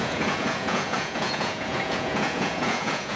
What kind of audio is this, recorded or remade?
remade